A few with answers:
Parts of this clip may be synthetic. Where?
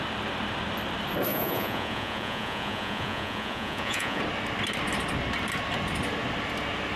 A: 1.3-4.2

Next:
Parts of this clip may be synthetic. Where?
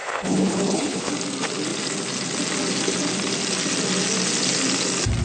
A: 0.0-1.1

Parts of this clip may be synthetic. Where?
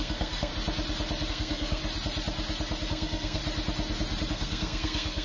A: 0.0-0.5; 1.3-1.8; 2.9-3.4; 4.3-5.2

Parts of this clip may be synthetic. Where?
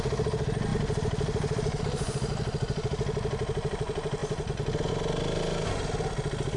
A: none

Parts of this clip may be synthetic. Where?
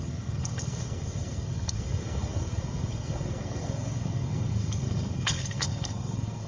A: 0.0-6.5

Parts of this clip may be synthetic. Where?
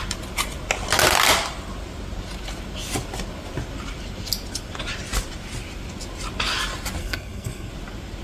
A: 7.0-7.7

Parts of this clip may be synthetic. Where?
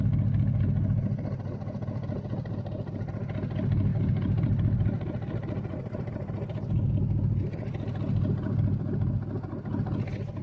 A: 3.9-6.9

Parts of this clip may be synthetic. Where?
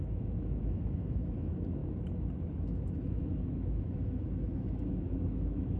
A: 0.0-1.8; 2.5-5.8